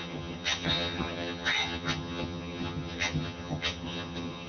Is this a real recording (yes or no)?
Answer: no